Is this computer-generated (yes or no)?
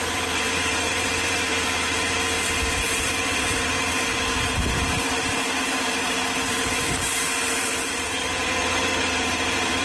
yes